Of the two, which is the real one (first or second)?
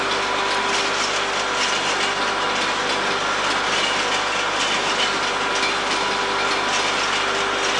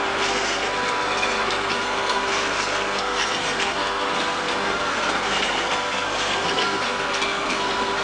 first